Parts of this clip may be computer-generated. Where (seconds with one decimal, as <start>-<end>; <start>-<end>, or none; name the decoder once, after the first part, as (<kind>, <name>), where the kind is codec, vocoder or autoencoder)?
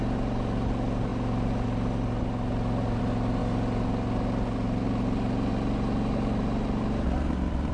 none